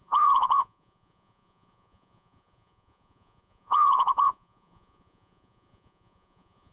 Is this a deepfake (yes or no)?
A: yes